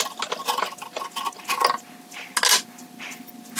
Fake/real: real